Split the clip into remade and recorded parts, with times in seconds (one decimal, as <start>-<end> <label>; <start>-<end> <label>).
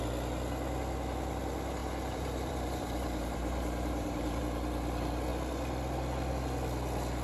0.0-1.8 recorded; 1.8-4.4 remade; 4.4-7.2 recorded